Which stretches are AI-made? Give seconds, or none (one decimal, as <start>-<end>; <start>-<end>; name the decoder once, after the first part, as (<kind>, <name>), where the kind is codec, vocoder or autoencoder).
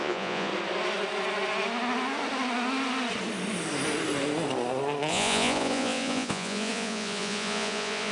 0.0-0.5 (vocoder, Vocos); 5.1-8.1